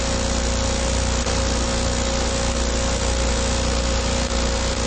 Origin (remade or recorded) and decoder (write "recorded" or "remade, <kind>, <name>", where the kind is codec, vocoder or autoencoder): recorded